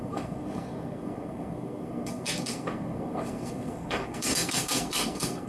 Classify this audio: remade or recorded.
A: remade